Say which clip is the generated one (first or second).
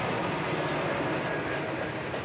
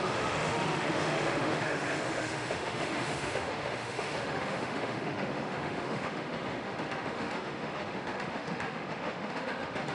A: second